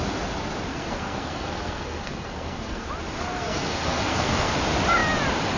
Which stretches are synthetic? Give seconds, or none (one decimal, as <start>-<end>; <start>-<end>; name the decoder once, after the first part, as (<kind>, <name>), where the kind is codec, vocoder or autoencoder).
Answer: 0.7-2.9 (codec, SNAC); 3.3-4.6